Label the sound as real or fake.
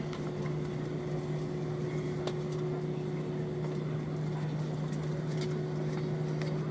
real